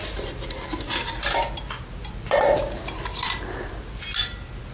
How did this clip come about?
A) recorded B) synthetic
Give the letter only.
A